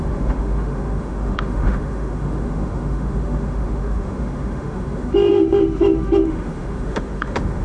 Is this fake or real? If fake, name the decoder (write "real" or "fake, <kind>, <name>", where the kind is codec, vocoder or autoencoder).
fake, autoencoder, DAC-VAE